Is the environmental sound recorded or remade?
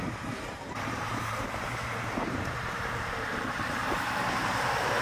remade